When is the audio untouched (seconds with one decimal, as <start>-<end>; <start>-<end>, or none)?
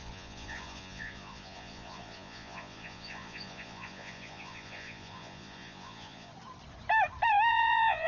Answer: 6.3-7.5